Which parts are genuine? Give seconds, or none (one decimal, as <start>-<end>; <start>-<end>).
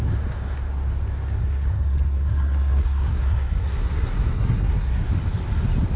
0.0-1.4; 5.0-6.0